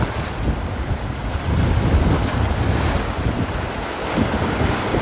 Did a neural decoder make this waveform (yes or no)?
no